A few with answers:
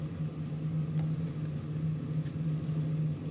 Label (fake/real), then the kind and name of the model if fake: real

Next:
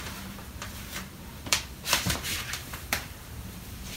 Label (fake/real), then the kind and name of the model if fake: fake, vocoder, BigVGAN v2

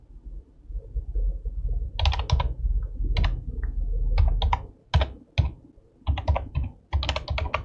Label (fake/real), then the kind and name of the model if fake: real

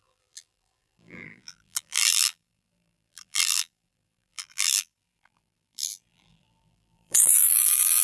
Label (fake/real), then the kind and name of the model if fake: fake, vocoder, BigVGAN v2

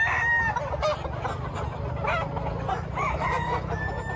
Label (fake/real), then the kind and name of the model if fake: real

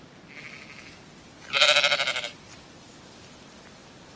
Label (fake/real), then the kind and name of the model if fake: real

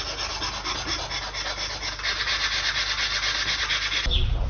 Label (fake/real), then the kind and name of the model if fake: real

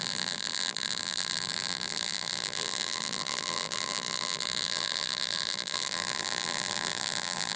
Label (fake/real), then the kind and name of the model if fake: fake, vocoder, BigVGAN v2